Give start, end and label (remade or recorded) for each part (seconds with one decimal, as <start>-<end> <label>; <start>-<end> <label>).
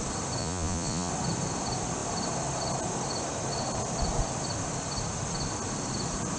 0.0-0.4 recorded; 0.4-1.1 remade; 1.1-6.4 recorded